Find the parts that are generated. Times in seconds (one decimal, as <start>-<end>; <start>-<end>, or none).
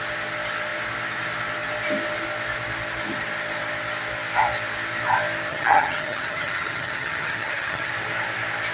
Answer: 5.5-7.9